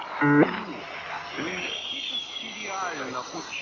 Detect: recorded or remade recorded